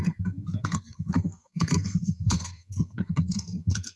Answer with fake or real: fake